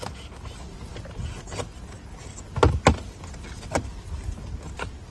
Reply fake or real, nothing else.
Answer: real